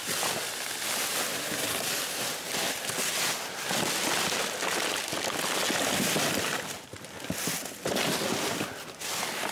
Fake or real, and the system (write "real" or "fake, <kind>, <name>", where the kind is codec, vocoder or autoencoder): real